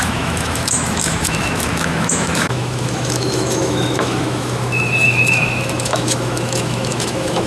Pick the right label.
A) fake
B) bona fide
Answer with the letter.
A